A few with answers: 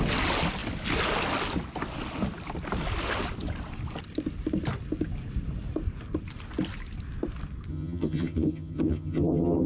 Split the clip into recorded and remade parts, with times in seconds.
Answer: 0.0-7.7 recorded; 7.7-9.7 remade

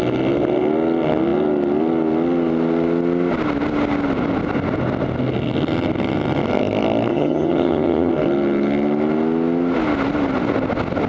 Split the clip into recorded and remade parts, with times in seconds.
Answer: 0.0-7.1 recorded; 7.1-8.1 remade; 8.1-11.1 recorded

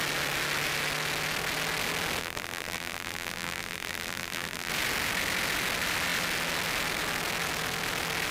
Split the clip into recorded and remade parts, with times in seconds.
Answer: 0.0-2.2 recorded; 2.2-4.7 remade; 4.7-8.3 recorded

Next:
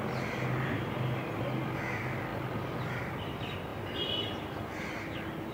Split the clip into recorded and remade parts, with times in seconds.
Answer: 0.0-5.5 recorded

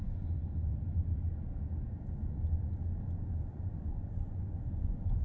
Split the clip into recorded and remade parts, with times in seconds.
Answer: 0.0-0.4 remade; 0.4-3.5 recorded; 3.5-5.2 remade